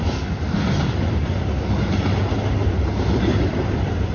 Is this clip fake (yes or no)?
no